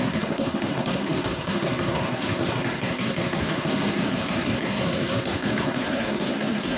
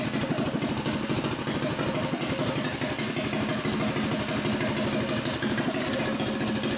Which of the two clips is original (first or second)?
second